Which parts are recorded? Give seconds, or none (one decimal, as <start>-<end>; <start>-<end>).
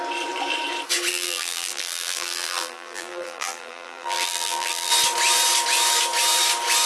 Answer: 0.0-1.1; 4.9-6.9